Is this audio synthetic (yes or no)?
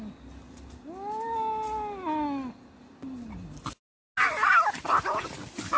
no